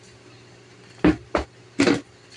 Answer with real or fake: real